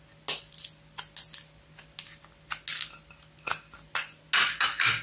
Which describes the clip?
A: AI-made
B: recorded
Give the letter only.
B